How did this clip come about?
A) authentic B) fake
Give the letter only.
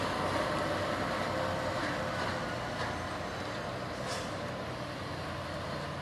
A